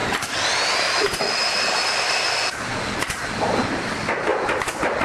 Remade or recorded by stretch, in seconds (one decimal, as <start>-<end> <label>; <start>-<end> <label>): 0.0-5.0 recorded